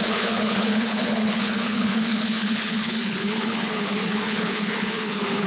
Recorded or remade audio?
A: remade